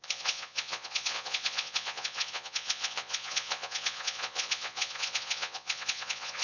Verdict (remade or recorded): remade